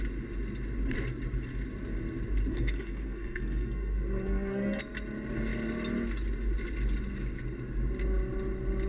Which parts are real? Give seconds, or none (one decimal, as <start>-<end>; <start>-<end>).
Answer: 0.0-2.5; 4.8-8.9